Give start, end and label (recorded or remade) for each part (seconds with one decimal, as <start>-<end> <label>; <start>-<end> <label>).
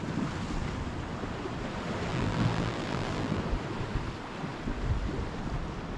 0.0-2.1 recorded; 2.1-3.4 remade; 3.4-6.0 recorded